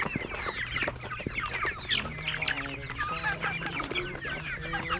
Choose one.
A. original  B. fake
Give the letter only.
A